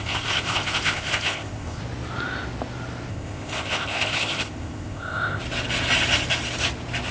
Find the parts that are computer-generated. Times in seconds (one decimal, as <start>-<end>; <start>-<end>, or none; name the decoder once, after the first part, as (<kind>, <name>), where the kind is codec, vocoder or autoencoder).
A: 0.0-1.8 (codec, ZipCodec); 3.1-5.4